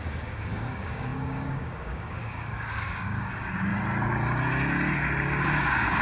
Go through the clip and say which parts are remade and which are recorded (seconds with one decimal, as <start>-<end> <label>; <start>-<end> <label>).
0.0-3.7 remade; 3.7-5.4 recorded; 5.4-6.0 remade